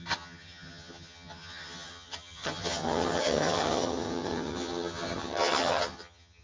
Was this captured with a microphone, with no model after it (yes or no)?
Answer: no